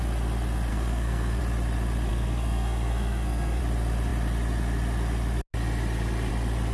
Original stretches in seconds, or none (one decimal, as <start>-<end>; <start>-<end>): 0.0-0.7; 1.4-2.1; 3.6-6.7

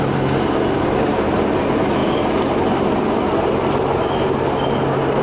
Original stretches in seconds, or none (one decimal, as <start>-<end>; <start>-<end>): 0.0-5.2

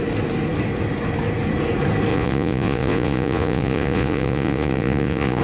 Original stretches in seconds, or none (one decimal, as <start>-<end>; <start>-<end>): 0.0-2.1

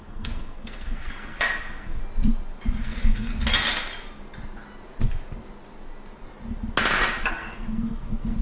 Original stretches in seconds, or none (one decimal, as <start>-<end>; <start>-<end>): 2.0-2.8; 3.3-7.3

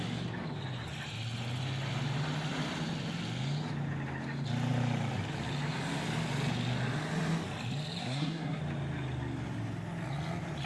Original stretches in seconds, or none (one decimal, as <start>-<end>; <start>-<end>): 0.0-8.0; 8.6-10.7

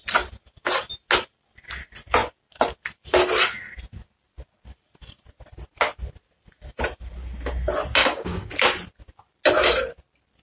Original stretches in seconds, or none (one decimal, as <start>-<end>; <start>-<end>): 0.0-8.0; 8.5-10.4

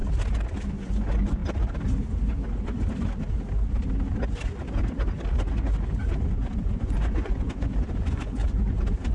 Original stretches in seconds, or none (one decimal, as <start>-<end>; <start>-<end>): 0.0-0.7; 1.4-6.6; 8.4-9.1